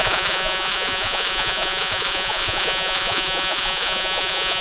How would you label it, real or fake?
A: fake